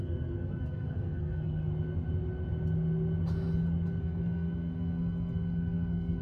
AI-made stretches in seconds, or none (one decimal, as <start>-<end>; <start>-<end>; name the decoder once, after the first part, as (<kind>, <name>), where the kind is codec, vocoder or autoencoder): 0.0-1.7 (codec, SNAC); 4.0-6.2